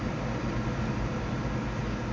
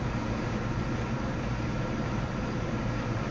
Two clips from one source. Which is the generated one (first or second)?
second